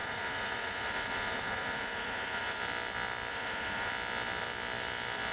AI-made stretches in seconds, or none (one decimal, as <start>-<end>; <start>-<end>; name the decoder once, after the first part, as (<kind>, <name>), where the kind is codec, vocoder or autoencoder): 0.0-2.6 (vocoder, Vocos); 3.3-3.9